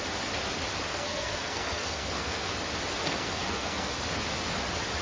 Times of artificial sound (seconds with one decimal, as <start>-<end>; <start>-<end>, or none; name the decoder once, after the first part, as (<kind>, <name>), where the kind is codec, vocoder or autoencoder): 0.9-2.5 (codec, SNAC); 3.0-3.9